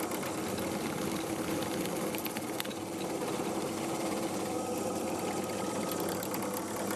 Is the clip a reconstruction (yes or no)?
no